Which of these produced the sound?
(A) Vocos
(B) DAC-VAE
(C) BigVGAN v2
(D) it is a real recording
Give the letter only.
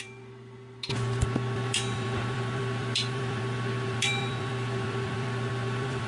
C